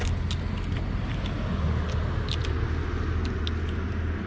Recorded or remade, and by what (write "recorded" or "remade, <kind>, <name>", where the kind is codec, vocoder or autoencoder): recorded